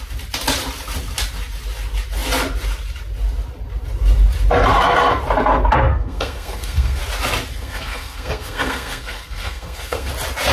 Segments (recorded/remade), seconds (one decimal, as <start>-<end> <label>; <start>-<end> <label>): 0.0-5.9 recorded; 5.9-7.0 remade; 7.0-7.5 recorded; 7.5-10.1 remade; 10.1-10.5 recorded